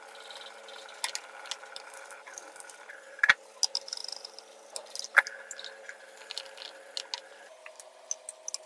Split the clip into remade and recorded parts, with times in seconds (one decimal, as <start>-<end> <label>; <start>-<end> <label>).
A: 0.0-8.7 recorded